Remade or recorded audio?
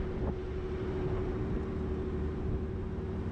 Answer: recorded